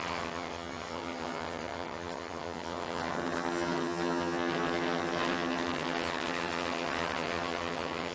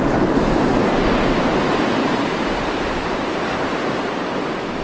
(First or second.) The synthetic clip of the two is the first